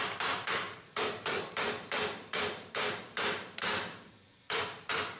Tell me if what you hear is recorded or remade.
remade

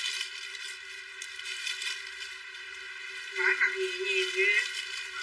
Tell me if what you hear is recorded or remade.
recorded